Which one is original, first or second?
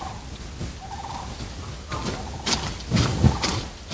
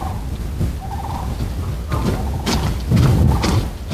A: second